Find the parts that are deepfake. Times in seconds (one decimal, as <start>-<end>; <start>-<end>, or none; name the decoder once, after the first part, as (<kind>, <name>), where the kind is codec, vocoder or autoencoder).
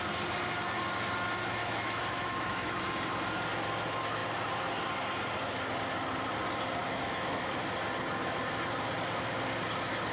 1.6-2.8 (autoencoder, DAC-VAE); 6.8-7.5